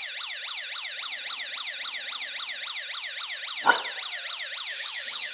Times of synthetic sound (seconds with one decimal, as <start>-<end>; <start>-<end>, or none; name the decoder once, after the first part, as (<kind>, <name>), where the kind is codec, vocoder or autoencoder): 4.7-5.3 (codec, DAC)